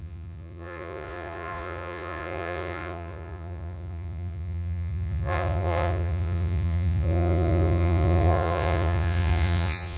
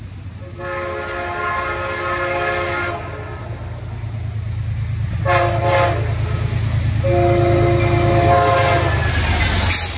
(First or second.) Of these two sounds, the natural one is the second